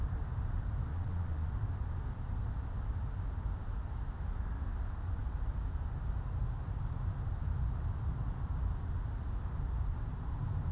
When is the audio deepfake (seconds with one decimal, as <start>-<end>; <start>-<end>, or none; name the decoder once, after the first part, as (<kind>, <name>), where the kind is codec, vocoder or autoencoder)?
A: 0.9-1.5 (vocoder, Vocos)